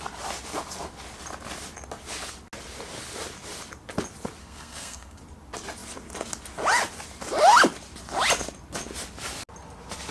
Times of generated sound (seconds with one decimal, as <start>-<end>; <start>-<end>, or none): 4.4-5.2